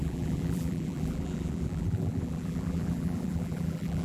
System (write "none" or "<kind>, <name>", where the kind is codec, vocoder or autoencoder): vocoder, BigVGAN v2